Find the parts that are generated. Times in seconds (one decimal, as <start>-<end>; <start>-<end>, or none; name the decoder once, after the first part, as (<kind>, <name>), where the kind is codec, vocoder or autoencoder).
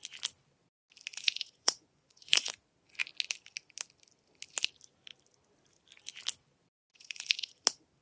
1.1-2.6 (vocoder, Vocos); 6.9-7.6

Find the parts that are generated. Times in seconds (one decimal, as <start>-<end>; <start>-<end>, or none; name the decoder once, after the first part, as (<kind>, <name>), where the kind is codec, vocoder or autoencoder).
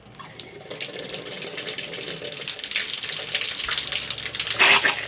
none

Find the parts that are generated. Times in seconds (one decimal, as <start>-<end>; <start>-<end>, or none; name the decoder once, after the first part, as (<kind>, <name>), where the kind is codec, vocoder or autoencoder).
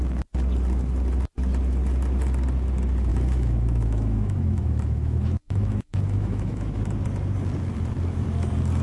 3.1-6.8 (autoencoder, DAC-VAE)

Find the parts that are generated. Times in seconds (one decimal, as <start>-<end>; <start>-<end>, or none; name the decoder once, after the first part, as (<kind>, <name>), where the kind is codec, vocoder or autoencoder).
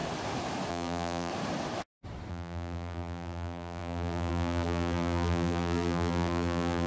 0.7-1.3 (vocoder, BigVGAN v2); 2.3-6.9